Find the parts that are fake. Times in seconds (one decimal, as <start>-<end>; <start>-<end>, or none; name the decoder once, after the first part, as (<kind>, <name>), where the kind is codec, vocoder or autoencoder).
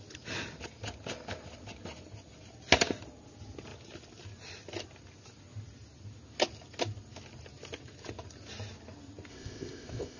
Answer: 9.3-10.2 (codec, ZipCodec)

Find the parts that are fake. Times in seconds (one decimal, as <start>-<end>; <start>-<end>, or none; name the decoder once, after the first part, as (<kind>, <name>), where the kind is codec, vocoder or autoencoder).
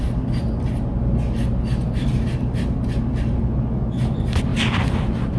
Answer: none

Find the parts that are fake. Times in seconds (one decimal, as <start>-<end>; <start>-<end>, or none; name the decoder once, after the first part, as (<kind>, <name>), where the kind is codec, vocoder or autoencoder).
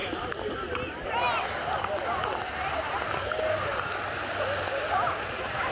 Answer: none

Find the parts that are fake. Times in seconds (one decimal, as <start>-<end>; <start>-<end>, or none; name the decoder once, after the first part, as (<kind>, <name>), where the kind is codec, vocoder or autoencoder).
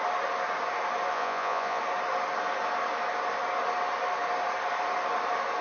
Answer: 1.1-1.8 (vocoder, Vocos)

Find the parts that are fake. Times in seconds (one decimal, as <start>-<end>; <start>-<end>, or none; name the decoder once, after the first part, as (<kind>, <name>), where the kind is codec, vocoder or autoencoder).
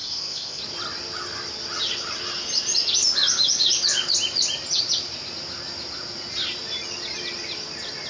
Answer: 0.0-0.6 (codec, ZipCodec)